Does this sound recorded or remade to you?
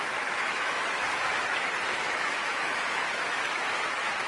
remade